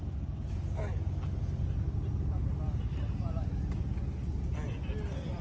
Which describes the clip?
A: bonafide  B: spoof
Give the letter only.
A